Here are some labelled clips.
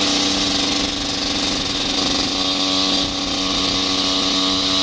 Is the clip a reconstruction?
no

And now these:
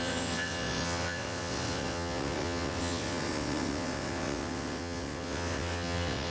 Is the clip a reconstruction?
yes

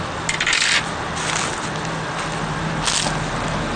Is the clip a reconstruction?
no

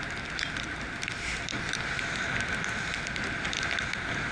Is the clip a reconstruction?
no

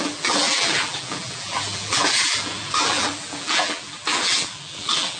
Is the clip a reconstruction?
yes